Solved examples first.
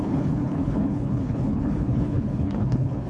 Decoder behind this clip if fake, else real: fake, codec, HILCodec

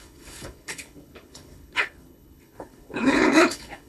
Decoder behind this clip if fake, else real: fake, codec, HILCodec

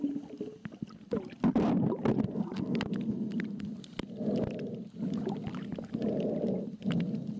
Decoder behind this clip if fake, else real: real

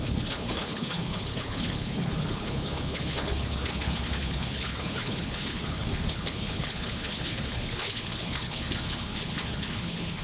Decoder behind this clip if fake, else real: fake, codec, HILCodec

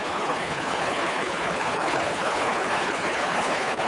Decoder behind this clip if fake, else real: fake, codec, HILCodec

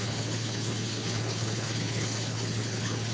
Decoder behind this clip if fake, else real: fake, codec, HILCodec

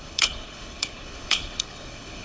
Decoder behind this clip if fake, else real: fake, codec, HILCodec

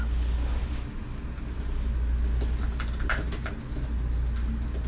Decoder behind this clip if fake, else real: real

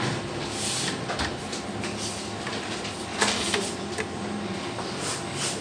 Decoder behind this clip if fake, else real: real